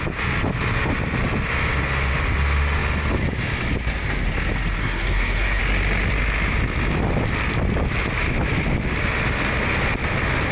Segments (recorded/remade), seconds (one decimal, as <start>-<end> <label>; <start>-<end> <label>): 0.0-4.8 recorded; 4.8-5.6 remade; 5.6-10.5 recorded